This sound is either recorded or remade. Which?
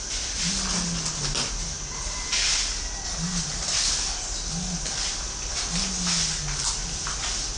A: recorded